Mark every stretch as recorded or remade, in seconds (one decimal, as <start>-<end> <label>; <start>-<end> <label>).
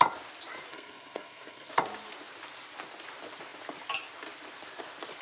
0.0-0.7 recorded; 0.7-1.7 remade; 1.7-5.2 recorded